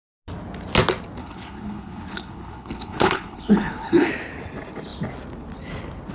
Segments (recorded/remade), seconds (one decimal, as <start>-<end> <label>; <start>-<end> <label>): 0.0-1.2 recorded; 1.2-4.1 remade; 4.1-6.1 recorded